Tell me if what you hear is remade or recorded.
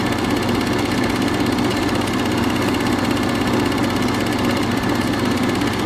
recorded